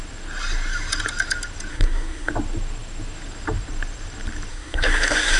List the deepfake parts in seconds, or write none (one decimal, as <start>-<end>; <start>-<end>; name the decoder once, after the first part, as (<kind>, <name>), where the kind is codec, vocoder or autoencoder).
1.7-2.3 (codec, SNAC); 4.5-5.4